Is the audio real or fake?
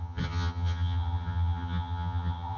fake